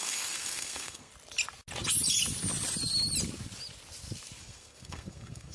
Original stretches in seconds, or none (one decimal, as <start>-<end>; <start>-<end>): 1.1-4.4